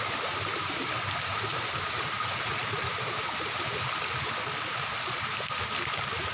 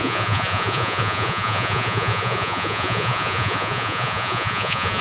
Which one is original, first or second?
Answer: first